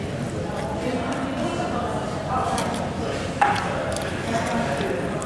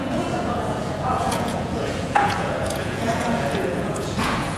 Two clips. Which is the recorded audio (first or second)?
first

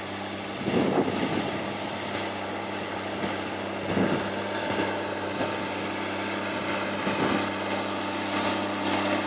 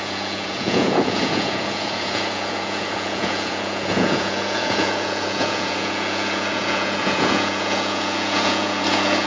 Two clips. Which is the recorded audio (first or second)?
first